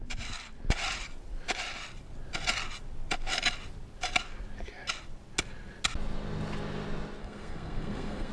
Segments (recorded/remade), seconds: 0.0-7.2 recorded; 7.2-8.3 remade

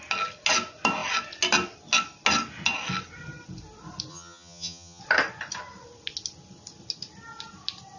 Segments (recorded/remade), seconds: 0.0-4.1 recorded; 4.1-5.0 remade; 5.0-8.0 recorded

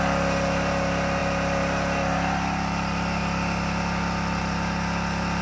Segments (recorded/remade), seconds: 0.0-5.4 recorded

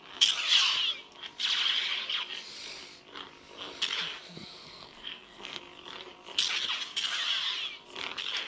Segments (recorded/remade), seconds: 0.0-4.2 recorded; 4.2-5.6 remade; 5.6-8.5 recorded

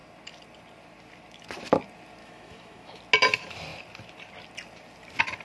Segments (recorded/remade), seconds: 0.0-2.2 recorded; 2.2-3.0 remade; 3.0-5.4 recorded